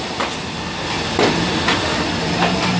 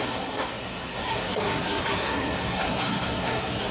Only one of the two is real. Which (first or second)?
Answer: first